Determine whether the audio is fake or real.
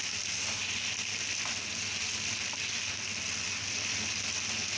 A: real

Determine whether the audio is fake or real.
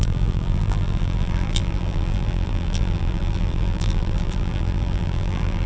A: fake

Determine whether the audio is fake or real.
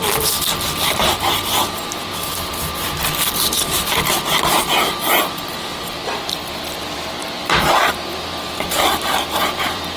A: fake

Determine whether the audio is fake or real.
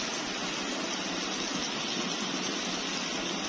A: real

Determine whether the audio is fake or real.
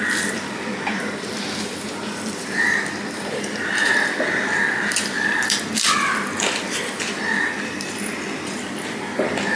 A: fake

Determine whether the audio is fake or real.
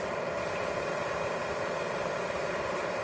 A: fake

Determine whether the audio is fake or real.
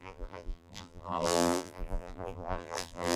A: fake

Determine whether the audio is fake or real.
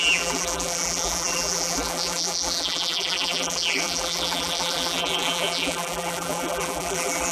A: fake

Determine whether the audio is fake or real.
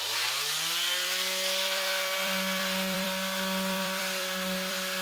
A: fake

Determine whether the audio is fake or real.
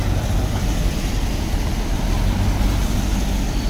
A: real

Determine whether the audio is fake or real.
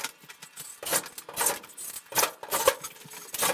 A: real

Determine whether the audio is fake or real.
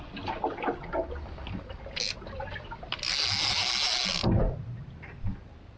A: real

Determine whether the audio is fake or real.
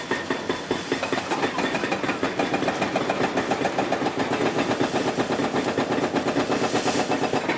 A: real